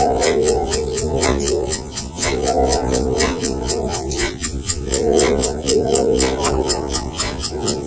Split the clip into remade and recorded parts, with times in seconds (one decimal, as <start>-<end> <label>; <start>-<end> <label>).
0.0-7.9 remade